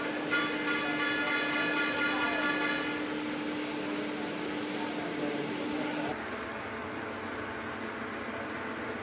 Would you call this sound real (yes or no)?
yes